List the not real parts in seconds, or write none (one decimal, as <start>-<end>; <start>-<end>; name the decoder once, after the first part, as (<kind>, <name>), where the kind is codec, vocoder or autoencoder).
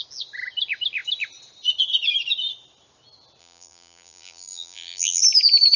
3.4-5.2 (vocoder, BigVGAN v2)